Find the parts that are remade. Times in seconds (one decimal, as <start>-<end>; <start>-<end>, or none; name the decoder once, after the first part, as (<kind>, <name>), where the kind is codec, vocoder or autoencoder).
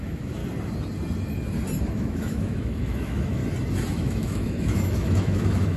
0.0-0.4 (autoencoder, DAC-VAE); 1.9-3.4; 3.9-5.8